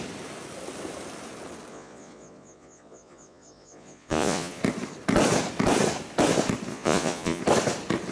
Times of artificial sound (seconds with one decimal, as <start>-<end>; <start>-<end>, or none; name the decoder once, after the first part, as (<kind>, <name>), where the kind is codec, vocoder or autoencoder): 1.7-4.6 (vocoder, Vocos); 6.7-7.4